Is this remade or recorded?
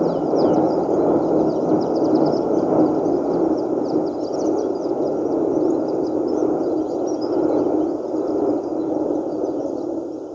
recorded